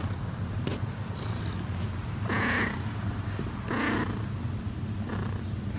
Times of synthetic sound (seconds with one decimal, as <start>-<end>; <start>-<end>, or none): none